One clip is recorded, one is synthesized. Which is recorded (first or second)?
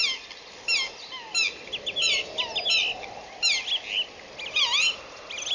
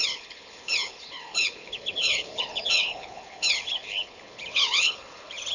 first